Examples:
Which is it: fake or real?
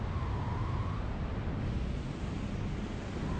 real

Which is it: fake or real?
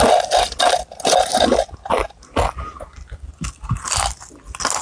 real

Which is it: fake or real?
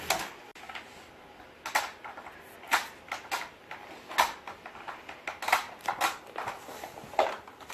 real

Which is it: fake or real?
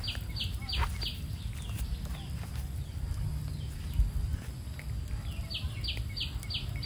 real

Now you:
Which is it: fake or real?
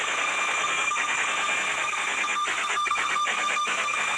fake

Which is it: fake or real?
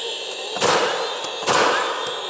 real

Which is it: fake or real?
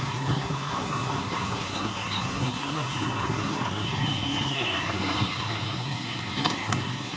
fake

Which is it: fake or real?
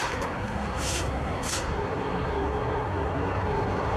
fake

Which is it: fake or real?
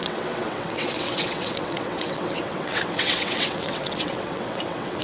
fake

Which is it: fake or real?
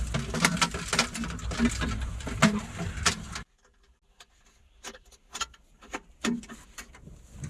real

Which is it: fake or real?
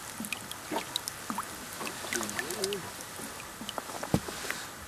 real